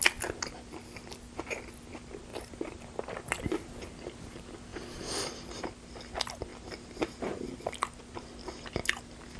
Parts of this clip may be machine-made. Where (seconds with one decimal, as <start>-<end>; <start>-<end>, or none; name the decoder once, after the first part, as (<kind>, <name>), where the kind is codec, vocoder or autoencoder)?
2.3-3.0 (vocoder, BigVGAN v2)